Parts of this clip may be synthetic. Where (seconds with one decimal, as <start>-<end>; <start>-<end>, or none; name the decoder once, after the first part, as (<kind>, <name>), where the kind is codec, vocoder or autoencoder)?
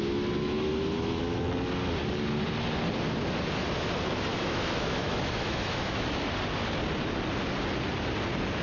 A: 0.4-1.2 (autoencoder, DAC-VAE); 4.3-6.3